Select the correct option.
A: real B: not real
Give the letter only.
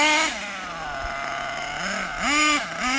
A